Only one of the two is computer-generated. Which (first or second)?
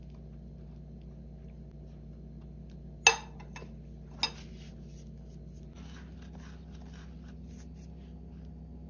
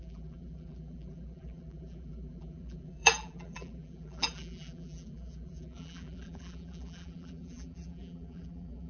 second